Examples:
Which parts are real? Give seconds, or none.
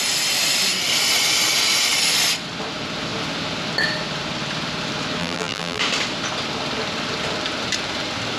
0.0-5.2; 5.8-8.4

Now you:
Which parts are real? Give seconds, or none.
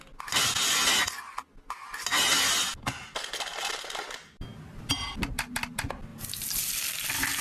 0.0-7.4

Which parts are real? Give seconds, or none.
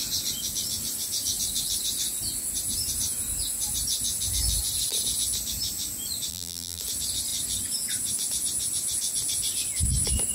0.0-6.3; 6.8-10.3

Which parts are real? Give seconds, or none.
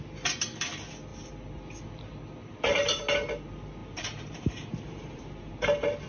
0.0-2.4; 3.0-3.8; 5.5-6.1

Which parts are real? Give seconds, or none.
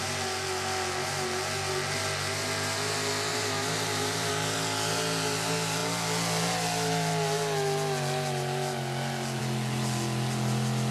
0.0-3.3; 4.3-10.9